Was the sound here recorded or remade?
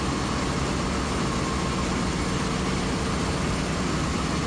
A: recorded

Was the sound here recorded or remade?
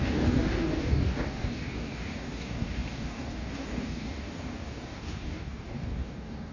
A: remade